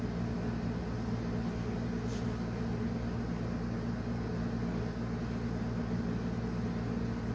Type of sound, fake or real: real